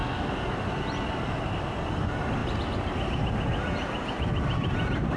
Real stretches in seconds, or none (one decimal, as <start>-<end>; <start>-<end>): 0.0-5.2